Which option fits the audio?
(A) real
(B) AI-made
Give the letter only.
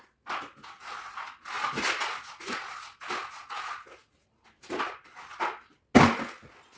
A